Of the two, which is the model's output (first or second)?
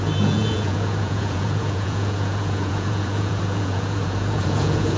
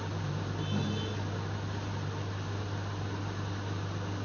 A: first